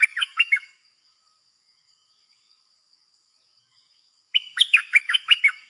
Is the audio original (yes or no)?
no